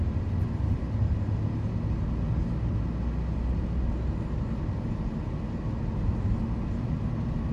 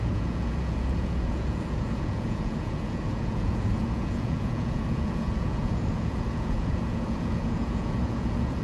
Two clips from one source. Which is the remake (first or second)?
second